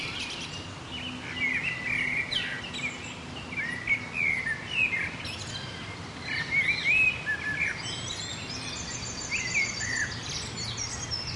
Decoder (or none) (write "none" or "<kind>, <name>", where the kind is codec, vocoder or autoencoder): none